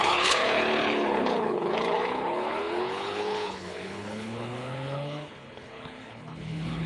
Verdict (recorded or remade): remade